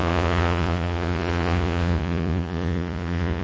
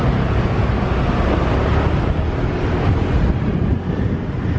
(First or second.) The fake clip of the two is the first